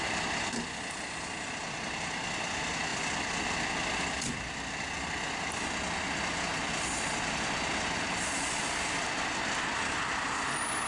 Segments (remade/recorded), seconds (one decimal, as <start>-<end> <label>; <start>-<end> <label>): 0.0-10.9 recorded